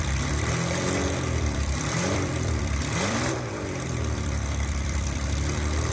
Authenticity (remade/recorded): remade